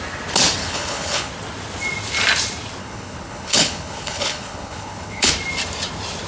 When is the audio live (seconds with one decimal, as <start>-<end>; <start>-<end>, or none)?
0.0-0.6; 1.3-2.8; 5.3-6.3